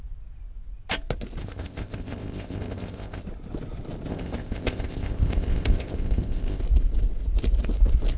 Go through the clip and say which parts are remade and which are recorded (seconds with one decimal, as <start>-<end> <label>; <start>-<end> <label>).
0.0-1.4 recorded; 1.4-3.2 remade; 3.2-4.1 recorded; 4.1-6.6 remade; 6.6-8.2 recorded